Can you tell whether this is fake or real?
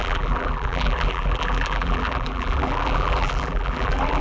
fake